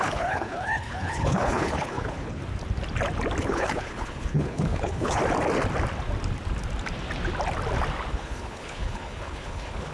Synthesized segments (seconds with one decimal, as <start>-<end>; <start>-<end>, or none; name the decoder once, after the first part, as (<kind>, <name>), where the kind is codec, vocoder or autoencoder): 0.0-2.4 (codec, HILCodec); 3.4-5.2; 8.1-9.9